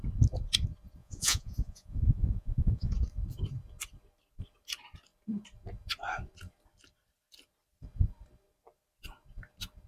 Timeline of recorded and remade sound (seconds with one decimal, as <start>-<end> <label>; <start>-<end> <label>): 0.0-1.0 recorded; 1.0-2.9 remade; 2.9-9.9 recorded

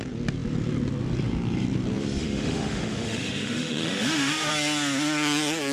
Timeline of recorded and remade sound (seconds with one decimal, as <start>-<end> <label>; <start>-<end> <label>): 0.0-2.2 recorded; 2.2-4.5 remade; 4.5-5.7 recorded

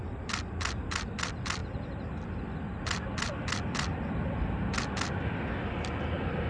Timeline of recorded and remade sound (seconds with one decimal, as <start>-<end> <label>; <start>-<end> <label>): 0.0-6.5 recorded

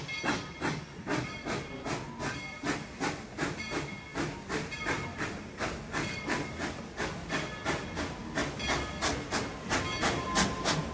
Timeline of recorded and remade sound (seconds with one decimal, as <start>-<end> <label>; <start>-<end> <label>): 0.0-4.1 recorded; 4.1-6.8 remade; 6.8-10.9 recorded

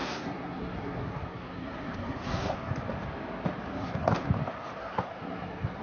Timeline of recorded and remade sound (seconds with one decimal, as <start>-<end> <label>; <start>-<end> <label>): 0.0-2.7 remade; 2.7-3.7 recorded; 3.7-4.3 remade; 4.3-4.8 recorded; 4.8-5.8 remade

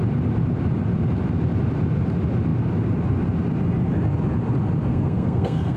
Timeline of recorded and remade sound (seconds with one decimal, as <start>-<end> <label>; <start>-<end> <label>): 0.0-4.9 recorded; 4.9-5.8 remade

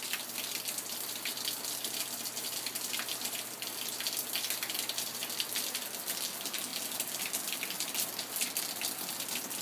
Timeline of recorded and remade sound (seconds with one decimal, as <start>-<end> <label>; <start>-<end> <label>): 0.0-9.6 recorded

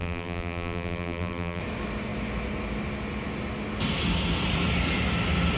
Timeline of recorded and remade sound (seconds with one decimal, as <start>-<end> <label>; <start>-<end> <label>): 0.0-1.6 remade; 1.6-5.6 recorded